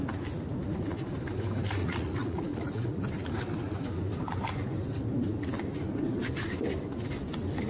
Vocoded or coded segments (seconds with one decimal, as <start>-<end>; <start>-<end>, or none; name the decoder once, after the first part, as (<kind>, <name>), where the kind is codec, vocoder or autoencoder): 1.8-3.0 (vocoder, Vocos)